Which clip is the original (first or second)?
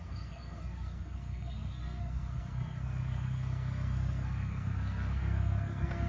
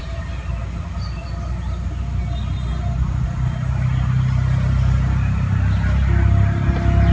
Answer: second